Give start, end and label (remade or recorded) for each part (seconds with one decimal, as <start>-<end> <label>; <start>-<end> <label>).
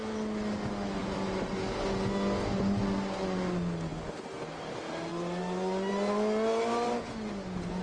0.0-7.8 recorded